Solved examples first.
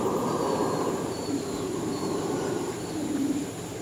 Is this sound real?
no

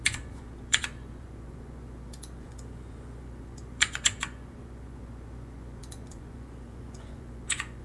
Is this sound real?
no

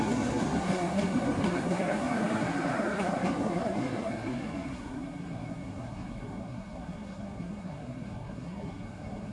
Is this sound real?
no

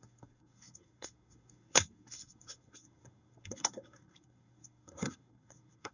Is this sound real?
no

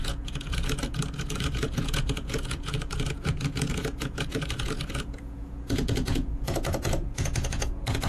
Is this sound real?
no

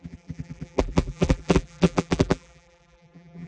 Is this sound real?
no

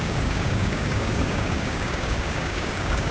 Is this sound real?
no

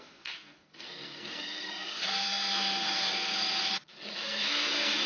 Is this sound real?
no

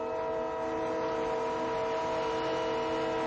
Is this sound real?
yes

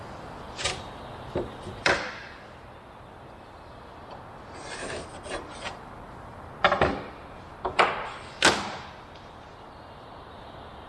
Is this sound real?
no